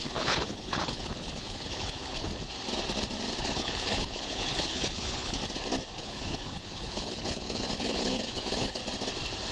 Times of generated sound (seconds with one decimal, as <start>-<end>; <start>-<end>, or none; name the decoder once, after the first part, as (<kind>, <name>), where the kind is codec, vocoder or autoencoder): 0.0-2.3 (codec, HILCodec); 3.4-5.4; 6.0-8.8